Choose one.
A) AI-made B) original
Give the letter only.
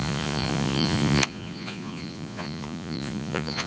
A